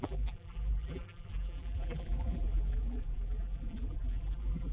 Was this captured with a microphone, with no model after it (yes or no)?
no